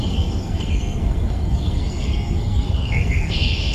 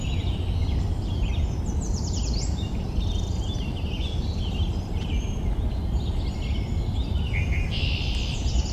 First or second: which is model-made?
first